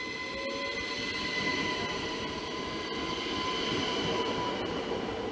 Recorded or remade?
recorded